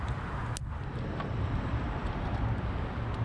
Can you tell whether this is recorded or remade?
recorded